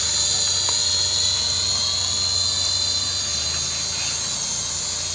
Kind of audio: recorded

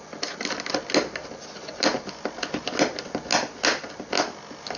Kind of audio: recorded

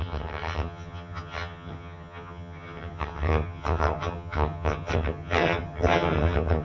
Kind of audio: remade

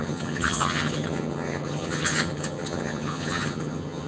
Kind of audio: remade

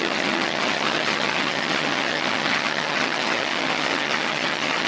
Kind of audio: remade